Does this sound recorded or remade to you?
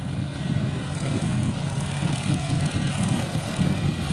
remade